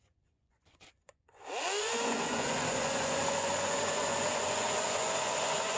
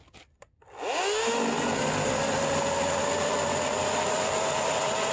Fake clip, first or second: first